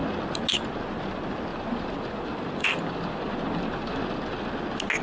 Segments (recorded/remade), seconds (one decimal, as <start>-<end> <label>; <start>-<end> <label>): 0.0-1.5 recorded; 1.5-4.5 remade; 4.5-5.0 recorded